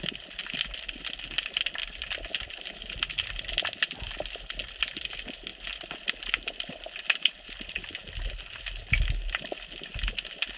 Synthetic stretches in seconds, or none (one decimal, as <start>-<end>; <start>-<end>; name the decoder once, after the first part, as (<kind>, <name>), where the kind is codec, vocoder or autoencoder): none